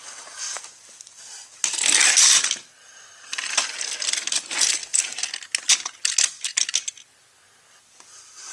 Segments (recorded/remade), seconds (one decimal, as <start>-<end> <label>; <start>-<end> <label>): 0.0-8.5 recorded